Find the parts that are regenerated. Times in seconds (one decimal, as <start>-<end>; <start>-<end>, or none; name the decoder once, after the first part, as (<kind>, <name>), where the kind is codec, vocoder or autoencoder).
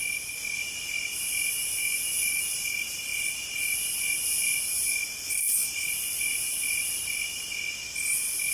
1.6-2.5 (autoencoder, DAC-VAE)